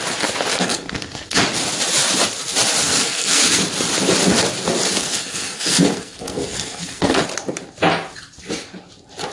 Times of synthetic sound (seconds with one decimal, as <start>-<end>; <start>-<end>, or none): 0.5-1.4; 2.8-3.6; 5.0-7.2